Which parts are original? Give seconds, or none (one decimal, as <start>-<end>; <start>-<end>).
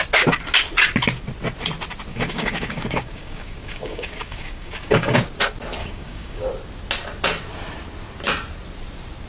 0.0-2.1; 5.2-5.8; 6.5-9.3